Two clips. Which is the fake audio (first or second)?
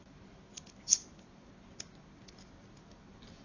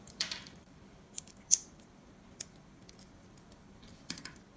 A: second